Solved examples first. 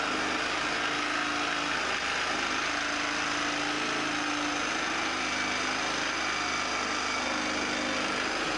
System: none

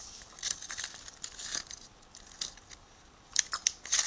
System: none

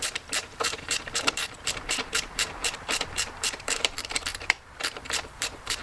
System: vocoder, BigVGAN v2